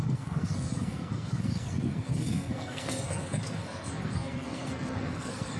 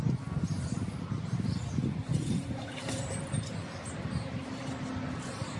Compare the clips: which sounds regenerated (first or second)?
first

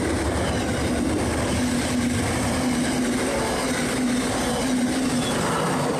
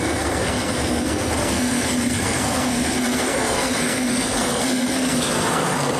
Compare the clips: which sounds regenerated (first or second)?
second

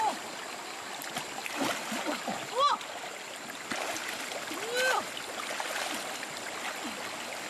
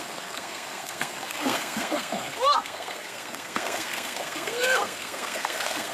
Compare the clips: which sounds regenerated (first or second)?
second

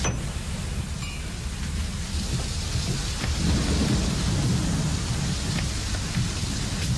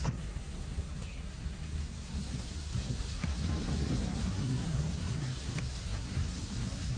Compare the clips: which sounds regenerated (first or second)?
second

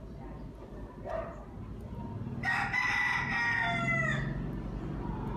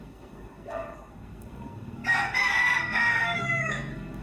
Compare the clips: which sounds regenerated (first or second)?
second